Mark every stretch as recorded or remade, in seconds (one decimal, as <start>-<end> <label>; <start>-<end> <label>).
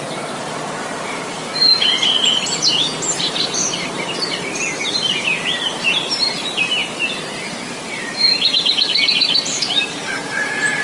0.0-6.8 remade; 6.8-7.4 recorded; 7.4-10.8 remade